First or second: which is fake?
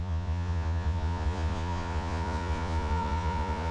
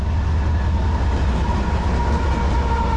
first